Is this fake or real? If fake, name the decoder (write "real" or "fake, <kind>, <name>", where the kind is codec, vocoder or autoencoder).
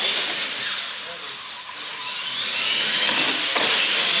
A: real